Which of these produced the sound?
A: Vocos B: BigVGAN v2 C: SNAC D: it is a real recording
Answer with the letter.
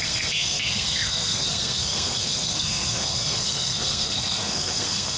C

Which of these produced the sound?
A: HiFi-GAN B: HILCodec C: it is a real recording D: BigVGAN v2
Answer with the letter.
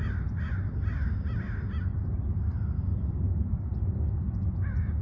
C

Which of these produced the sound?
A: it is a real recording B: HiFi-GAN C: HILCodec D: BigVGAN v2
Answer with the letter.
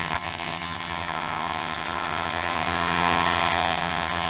B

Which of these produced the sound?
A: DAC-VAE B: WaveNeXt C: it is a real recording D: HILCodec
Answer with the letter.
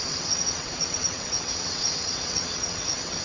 B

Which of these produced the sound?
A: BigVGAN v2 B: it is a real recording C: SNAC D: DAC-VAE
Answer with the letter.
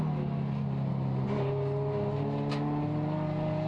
B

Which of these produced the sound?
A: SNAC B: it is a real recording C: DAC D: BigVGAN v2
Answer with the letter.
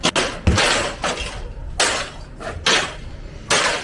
B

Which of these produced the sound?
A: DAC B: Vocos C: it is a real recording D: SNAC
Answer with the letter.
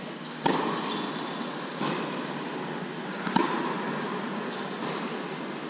C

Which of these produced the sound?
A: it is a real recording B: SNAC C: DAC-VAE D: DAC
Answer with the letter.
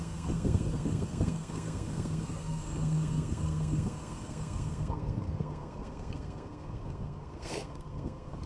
B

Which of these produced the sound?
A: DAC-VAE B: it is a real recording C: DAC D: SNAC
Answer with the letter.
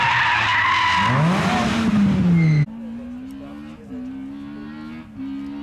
B